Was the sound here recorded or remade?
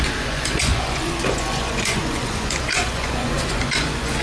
remade